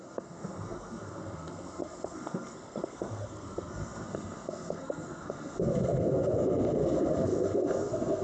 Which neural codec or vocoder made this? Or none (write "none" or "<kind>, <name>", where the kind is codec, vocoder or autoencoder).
codec, SNAC